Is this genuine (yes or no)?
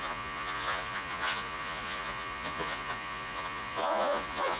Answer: no